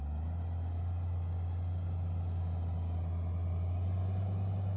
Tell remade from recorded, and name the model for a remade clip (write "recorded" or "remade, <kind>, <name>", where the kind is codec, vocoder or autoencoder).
recorded